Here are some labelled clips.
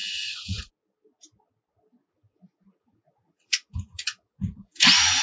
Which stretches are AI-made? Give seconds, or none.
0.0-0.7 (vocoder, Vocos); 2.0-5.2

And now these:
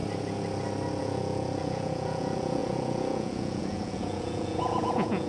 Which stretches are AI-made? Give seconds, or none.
1.0-5.3 (vocoder, Vocos)

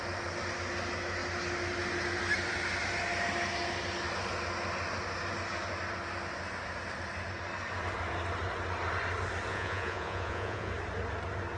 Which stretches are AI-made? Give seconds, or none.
9.5-10.7 (vocoder, Vocos)

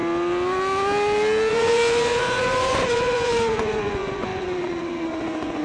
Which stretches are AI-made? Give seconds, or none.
1.5-5.6 (vocoder, Vocos)